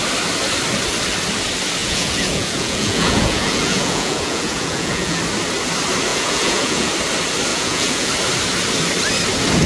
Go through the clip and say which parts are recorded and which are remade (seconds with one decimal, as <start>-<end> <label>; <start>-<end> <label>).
0.0-1.8 recorded; 1.8-5.2 remade; 5.2-6.1 recorded; 6.1-6.9 remade; 6.9-7.5 recorded; 7.5-8.1 remade; 8.1-9.7 recorded